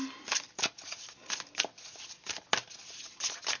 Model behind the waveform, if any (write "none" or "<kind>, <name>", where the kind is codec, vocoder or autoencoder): none